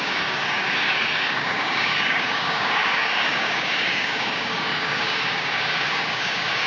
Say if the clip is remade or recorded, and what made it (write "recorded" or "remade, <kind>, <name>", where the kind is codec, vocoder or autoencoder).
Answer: remade, codec, DAC